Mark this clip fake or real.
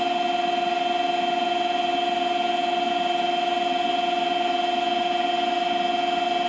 real